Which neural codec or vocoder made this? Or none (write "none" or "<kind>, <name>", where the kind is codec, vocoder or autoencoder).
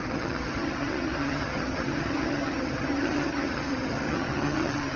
vocoder, HiFi-GAN